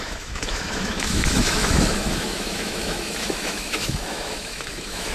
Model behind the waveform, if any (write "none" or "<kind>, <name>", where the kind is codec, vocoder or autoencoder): autoencoder, DAC-VAE